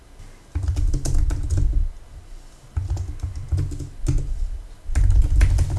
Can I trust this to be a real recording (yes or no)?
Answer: yes